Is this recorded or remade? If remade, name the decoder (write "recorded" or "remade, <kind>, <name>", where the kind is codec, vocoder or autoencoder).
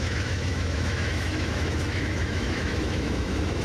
remade, autoencoder, DAC-VAE